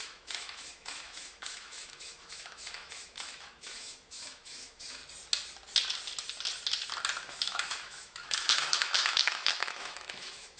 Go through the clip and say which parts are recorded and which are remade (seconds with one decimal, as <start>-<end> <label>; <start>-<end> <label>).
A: 0.0-5.0 remade; 5.0-7.2 recorded; 7.2-10.6 remade

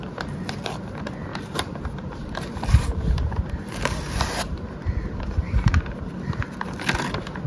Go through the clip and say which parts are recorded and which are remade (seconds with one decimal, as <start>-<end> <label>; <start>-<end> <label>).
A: 0.0-1.3 recorded; 1.3-5.7 remade; 5.7-7.5 recorded